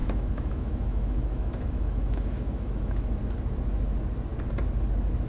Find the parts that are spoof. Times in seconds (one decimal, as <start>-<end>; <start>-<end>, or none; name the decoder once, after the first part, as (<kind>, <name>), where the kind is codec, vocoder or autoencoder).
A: 0.0-3.2 (autoencoder, DAC-VAE)